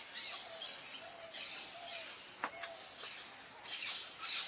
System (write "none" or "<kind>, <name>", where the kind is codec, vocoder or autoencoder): none